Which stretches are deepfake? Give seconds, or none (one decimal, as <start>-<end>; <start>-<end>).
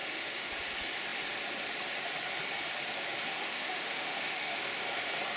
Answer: 0.0-0.5; 3.3-4.8